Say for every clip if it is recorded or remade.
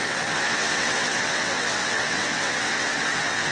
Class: remade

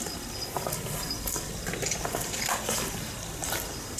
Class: recorded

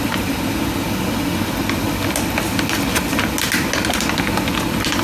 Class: recorded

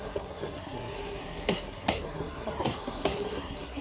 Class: remade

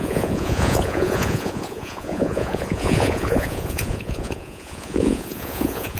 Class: remade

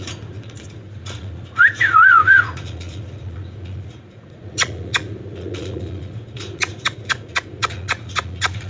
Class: remade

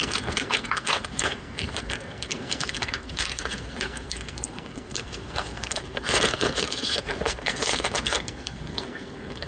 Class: remade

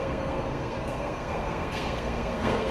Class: remade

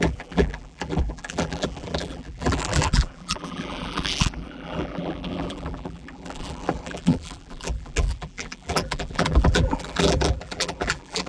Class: remade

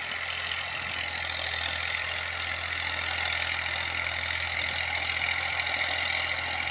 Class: recorded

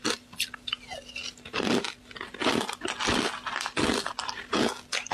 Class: recorded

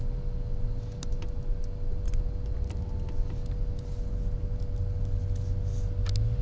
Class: recorded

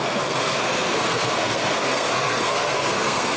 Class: remade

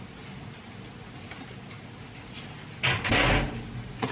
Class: recorded